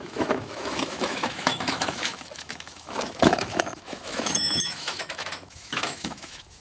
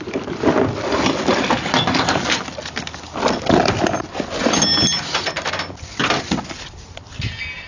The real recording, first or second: second